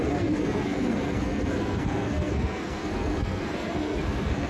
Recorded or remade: remade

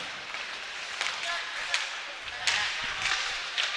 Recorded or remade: recorded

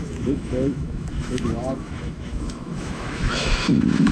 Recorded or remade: remade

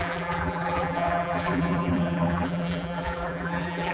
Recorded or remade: remade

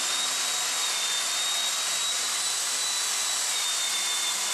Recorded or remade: recorded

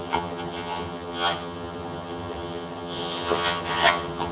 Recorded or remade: remade